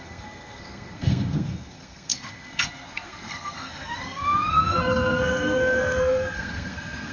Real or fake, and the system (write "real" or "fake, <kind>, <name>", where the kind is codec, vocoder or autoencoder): fake, codec, SNAC